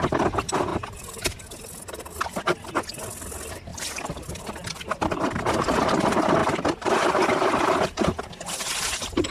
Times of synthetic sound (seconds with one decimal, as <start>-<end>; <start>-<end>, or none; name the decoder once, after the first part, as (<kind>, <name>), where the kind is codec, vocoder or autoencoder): 3.7-4.8 (vocoder, BigVGAN v2); 6.4-8.2